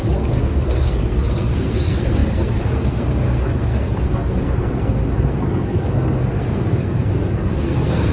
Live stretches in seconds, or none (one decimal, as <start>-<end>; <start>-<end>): none